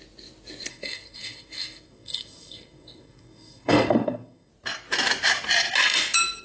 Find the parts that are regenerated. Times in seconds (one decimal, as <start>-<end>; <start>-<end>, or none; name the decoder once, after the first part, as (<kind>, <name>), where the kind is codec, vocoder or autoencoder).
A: 0.7-4.5 (codec, SNAC)